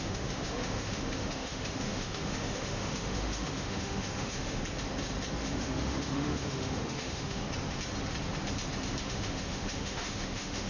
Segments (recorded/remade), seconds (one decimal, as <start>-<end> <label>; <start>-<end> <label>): 0.0-4.6 remade; 4.6-5.4 recorded; 5.4-7.4 remade; 7.4-9.0 recorded; 9.0-10.7 remade